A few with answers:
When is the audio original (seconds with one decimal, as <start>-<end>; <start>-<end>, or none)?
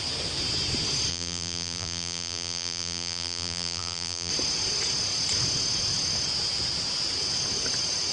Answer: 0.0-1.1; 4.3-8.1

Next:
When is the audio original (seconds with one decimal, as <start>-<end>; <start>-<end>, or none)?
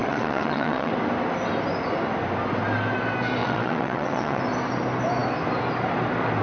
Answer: 0.9-3.4; 4.4-6.4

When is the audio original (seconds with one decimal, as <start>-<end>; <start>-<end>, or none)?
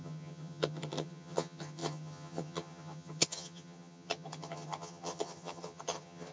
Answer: none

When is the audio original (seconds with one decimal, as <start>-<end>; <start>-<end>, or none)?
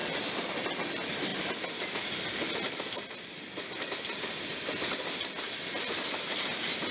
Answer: 0.0-6.9